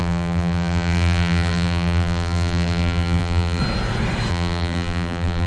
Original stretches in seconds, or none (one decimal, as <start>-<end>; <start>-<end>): 3.6-4.3